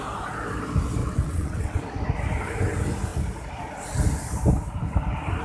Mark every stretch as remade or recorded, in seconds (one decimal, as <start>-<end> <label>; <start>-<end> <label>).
0.0-1.0 recorded; 1.0-1.8 remade; 1.8-5.4 recorded

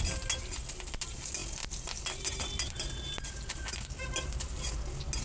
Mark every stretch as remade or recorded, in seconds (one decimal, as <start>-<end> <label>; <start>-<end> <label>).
0.0-5.2 recorded